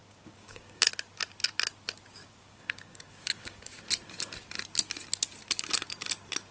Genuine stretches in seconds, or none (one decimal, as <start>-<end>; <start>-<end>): 0.9-2.2; 3.8-6.5